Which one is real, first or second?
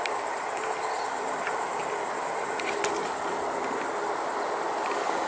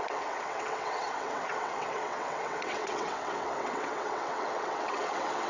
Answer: first